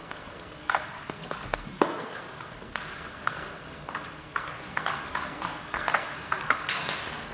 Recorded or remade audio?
remade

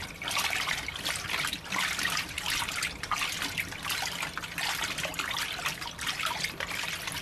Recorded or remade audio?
recorded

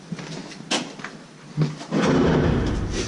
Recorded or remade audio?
recorded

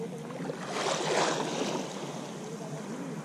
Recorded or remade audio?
recorded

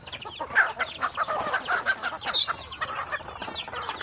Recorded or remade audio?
recorded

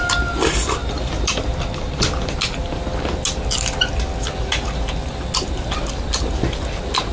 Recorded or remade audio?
recorded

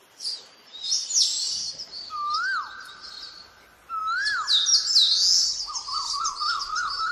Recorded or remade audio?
recorded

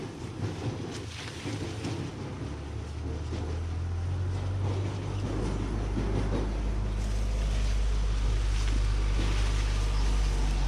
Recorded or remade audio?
recorded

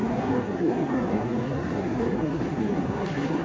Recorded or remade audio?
remade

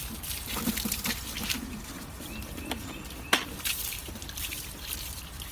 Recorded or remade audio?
recorded